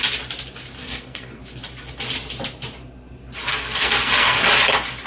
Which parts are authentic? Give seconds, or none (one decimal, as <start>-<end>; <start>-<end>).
0.0-0.8; 1.4-3.5; 4.5-5.1